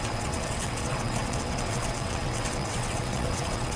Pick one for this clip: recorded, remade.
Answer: remade